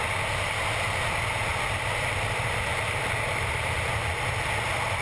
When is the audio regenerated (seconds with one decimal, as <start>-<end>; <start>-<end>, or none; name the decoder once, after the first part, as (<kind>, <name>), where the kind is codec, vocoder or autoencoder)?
1.5-4.5 (vocoder, BigVGAN v2)